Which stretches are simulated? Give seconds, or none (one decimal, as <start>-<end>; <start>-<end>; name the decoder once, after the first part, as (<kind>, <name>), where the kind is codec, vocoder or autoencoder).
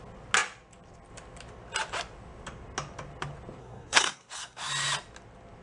3.6-4.7 (codec, SNAC)